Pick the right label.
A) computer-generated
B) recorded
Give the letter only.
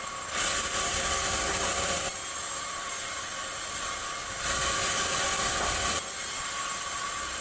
B